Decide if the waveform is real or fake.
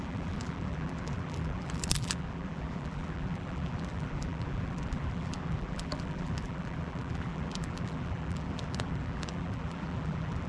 fake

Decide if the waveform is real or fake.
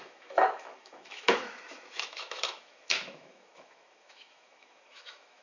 fake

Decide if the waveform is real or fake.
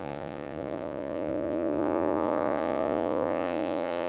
fake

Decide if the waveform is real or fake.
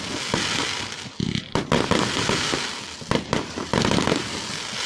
real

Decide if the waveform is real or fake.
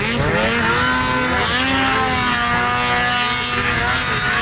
real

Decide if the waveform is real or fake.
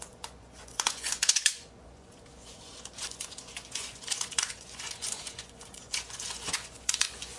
fake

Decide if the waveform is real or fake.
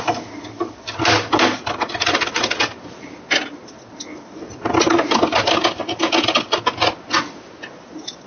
real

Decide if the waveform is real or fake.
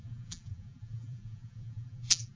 fake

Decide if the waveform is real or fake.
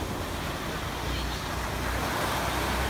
real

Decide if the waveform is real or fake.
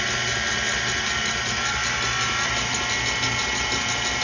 real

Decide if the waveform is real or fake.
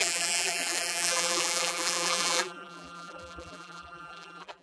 fake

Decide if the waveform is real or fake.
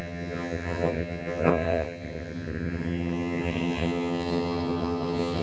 fake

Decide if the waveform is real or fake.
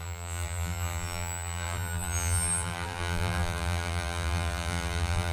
fake